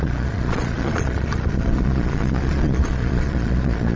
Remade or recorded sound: remade